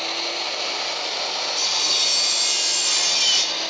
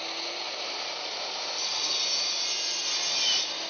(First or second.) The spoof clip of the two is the second